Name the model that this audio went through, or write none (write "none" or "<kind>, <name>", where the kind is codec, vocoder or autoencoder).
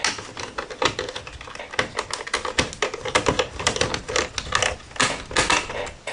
none